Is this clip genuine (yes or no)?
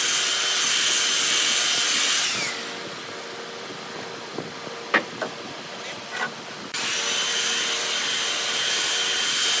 yes